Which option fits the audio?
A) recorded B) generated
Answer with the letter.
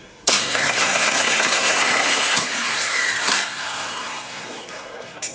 B